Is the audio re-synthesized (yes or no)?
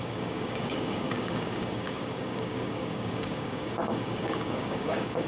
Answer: yes